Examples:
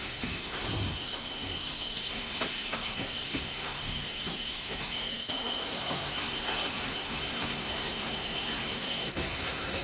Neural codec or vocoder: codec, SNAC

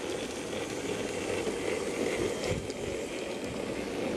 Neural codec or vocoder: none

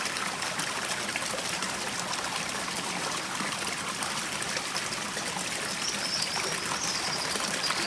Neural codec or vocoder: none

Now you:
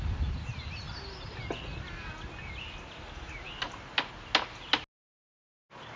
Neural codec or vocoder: none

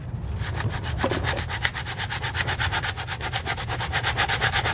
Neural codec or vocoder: none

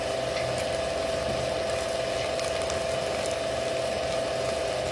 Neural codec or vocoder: none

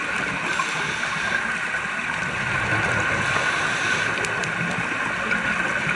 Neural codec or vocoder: none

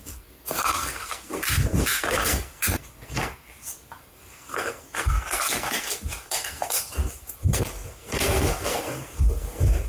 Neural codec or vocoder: codec, SNAC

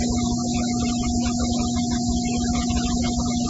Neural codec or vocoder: none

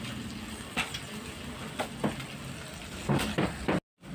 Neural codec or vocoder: none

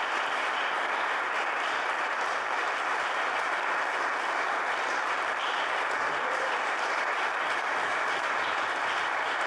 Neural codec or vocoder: vocoder, BigVGAN v2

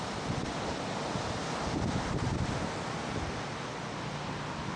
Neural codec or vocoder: none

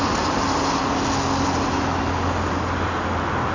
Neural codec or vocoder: none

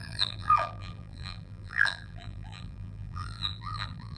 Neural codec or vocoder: vocoder, BigVGAN v2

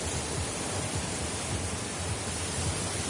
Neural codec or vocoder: none